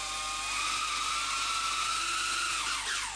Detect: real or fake real